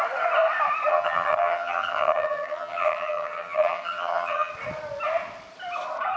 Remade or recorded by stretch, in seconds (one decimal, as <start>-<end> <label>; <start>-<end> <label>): 0.0-0.9 recorded; 0.9-4.5 remade; 4.5-6.2 recorded